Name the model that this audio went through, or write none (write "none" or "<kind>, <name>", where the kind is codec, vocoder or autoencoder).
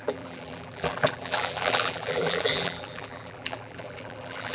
vocoder, BigVGAN v2